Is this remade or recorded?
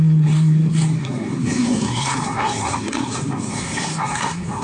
remade